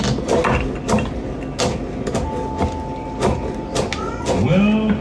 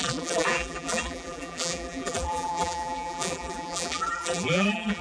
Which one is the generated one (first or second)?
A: second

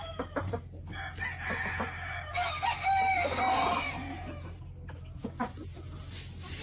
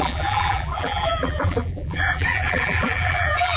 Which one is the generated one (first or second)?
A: second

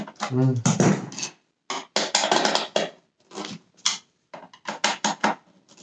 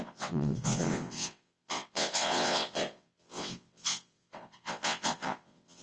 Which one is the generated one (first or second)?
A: second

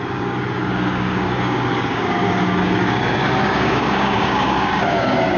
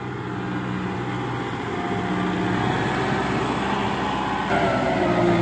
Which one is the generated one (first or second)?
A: first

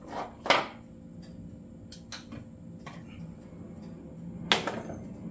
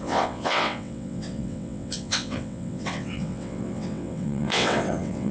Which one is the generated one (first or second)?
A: second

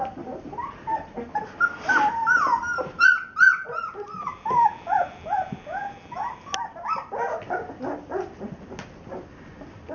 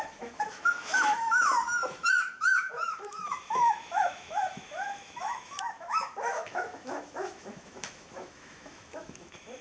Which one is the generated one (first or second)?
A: second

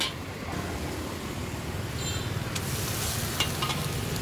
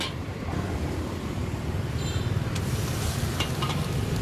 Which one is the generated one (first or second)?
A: second